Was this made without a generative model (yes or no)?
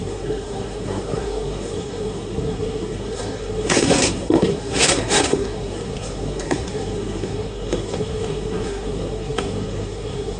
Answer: no